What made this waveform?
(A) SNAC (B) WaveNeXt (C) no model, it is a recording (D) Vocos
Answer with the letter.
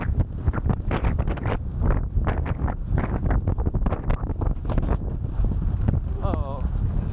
C